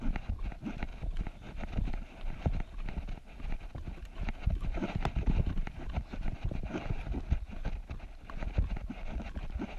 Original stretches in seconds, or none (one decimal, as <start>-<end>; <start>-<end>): 0.0-0.9; 6.0-9.8